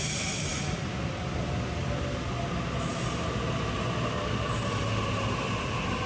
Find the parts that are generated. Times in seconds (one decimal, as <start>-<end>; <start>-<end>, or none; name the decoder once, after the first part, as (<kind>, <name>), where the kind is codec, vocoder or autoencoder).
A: none